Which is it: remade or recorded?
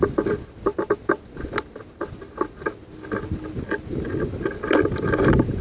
recorded